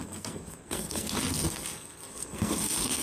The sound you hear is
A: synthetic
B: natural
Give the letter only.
A